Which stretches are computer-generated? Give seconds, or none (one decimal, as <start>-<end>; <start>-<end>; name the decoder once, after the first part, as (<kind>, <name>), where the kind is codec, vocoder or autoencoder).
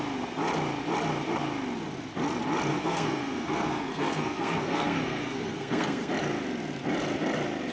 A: 2.7-6.1 (codec, SNAC)